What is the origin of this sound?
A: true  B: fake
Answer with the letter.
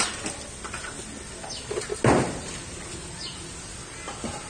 A